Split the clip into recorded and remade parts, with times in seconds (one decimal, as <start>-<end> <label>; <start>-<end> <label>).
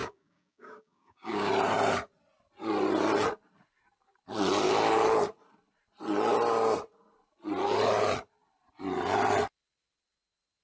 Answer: 0.0-1.5 remade; 1.5-10.6 recorded